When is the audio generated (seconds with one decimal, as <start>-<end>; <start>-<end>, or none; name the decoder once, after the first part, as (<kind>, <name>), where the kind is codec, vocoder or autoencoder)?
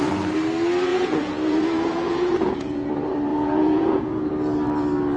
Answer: 0.9-2.9 (vocoder, Vocos); 3.3-4.3